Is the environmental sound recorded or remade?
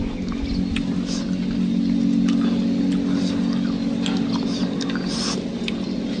recorded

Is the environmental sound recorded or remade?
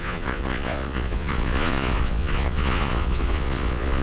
remade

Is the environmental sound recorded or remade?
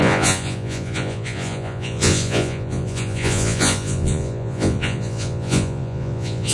remade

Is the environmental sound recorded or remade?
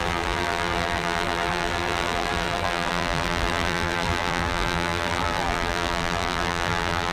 remade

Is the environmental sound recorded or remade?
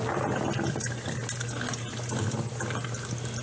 recorded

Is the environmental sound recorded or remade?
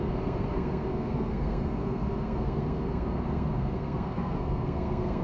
remade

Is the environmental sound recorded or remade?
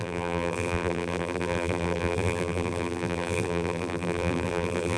remade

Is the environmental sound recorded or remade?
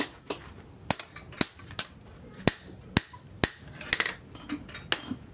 recorded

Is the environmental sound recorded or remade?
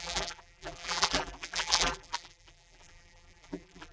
remade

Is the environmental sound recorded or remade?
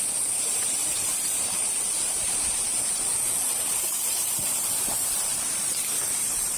remade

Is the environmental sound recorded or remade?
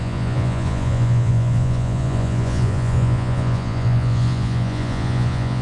remade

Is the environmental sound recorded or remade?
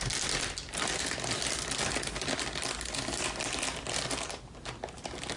recorded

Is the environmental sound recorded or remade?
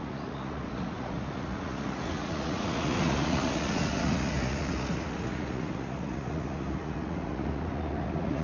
remade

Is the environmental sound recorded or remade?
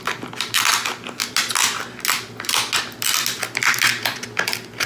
recorded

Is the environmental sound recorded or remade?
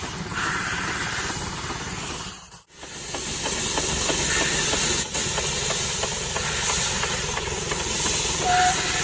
recorded